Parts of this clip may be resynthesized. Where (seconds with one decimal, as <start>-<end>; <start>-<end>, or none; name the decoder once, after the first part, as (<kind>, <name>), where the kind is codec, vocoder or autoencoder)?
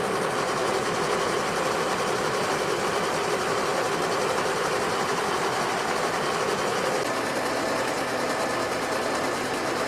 none